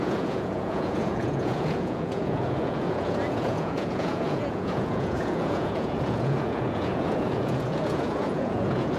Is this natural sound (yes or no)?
no